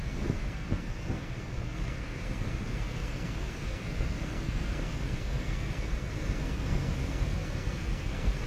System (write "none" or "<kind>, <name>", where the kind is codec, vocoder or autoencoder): codec, SNAC